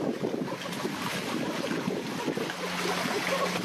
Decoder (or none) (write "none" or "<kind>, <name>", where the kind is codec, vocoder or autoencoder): none